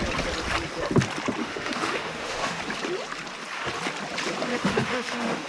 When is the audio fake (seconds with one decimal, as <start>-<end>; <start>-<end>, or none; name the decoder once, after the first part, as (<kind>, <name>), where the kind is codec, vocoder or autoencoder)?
1.4-2.6 (autoencoder, DAC-VAE); 4.5-5.5